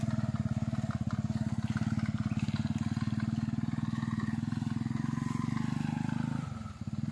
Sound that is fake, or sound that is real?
real